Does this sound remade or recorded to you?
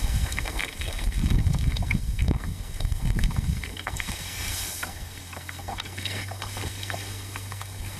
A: remade